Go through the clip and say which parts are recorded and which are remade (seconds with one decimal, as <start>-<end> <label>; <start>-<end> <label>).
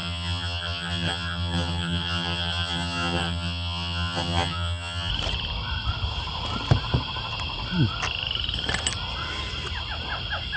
0.0-5.1 remade; 5.1-10.6 recorded